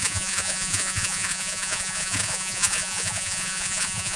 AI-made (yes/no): yes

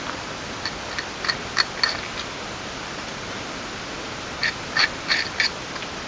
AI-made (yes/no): no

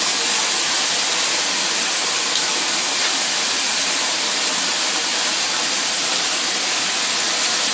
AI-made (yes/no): no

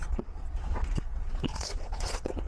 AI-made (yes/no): yes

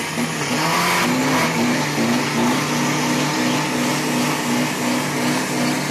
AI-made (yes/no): no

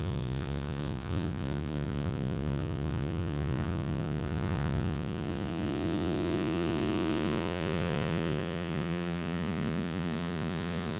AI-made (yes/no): yes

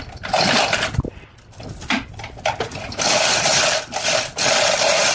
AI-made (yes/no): no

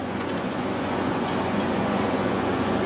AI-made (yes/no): yes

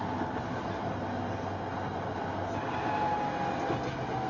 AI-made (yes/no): no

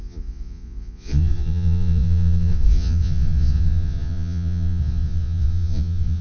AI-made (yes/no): yes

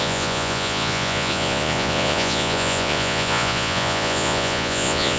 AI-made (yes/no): yes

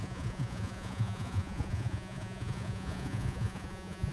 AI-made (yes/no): yes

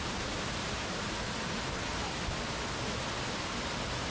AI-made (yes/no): no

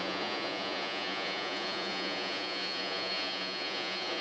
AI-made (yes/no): yes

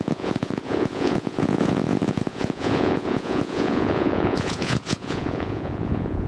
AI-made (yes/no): yes